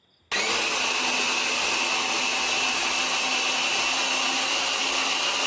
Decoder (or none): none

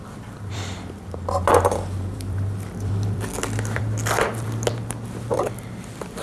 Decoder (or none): vocoder, BigVGAN v2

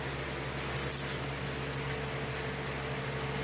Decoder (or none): none